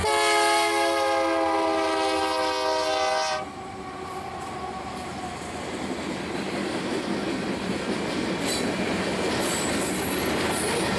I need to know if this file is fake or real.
real